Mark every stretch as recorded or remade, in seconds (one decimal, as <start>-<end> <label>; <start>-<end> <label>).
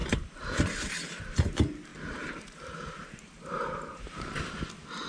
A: 0.0-0.6 remade; 0.6-1.9 recorded; 1.9-4.6 remade; 4.6-5.1 recorded